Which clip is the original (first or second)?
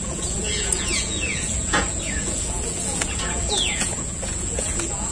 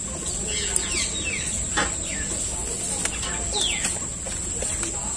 second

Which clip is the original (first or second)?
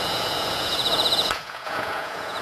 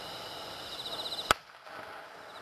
second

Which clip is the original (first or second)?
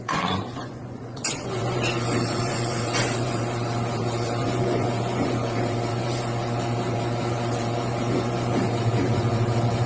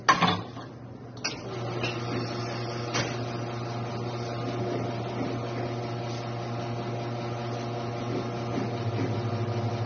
second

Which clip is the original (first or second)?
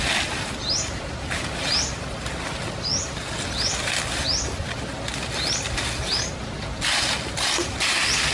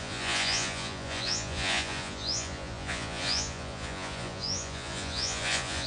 first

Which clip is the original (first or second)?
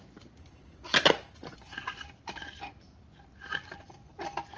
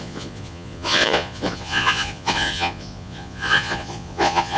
first